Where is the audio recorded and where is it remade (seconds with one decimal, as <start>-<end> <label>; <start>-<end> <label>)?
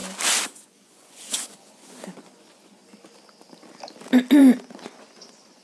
0.0-0.5 recorded; 0.5-2.8 remade; 2.8-4.4 recorded; 4.4-5.6 remade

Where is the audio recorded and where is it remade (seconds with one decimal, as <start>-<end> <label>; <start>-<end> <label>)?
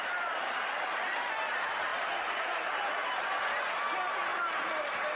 0.0-5.2 recorded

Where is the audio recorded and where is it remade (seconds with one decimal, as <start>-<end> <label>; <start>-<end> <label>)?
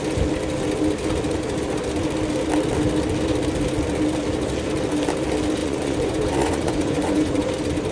0.0-5.6 recorded; 5.6-7.5 remade; 7.5-7.9 recorded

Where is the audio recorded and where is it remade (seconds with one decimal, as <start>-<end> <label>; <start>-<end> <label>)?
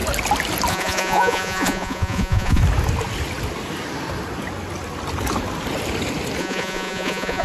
0.0-0.7 recorded; 0.7-2.6 remade; 2.6-6.4 recorded; 6.4-7.4 remade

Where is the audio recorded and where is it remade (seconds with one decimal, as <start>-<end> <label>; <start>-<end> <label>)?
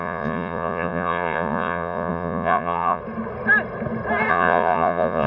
0.0-3.0 remade; 3.0-4.3 recorded; 4.3-5.3 remade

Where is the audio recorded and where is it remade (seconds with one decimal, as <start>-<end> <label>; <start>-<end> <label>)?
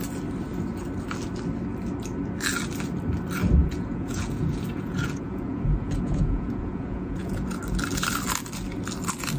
0.0-3.6 recorded; 3.6-7.6 remade; 7.6-9.4 recorded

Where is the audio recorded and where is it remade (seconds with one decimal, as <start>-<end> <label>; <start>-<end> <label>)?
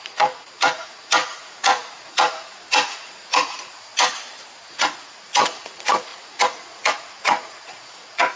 0.0-3.9 remade; 3.9-4.7 recorded; 4.7-8.4 remade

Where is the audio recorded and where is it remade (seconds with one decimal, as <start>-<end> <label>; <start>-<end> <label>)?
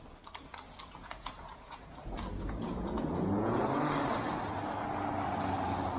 0.0-1.0 recorded; 1.0-3.6 remade; 3.6-6.0 recorded